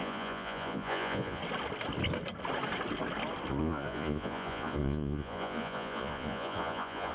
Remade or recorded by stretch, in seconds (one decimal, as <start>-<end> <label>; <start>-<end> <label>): 0.0-1.4 remade; 1.4-3.6 recorded; 3.6-7.1 remade